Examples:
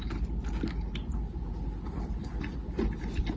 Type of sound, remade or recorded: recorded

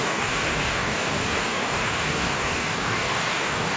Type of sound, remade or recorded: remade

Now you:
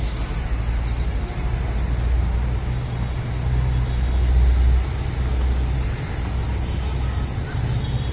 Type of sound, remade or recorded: recorded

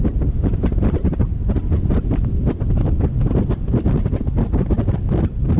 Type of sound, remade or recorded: remade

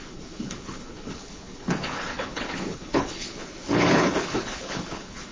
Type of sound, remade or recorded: remade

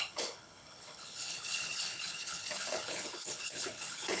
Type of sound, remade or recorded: remade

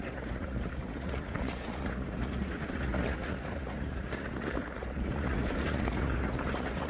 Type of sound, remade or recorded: remade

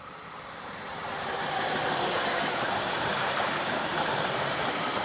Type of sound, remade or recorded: remade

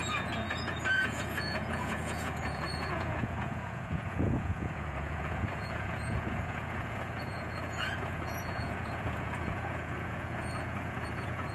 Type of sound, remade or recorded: remade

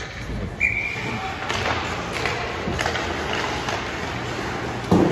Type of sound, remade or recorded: recorded